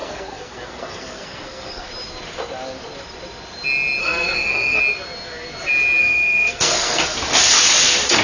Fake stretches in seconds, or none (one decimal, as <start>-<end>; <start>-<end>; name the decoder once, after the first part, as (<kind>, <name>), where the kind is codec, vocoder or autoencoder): 0.0-1.9 (codec, SNAC); 4.0-4.8; 6.0-7.0